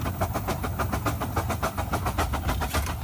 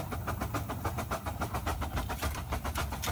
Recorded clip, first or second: first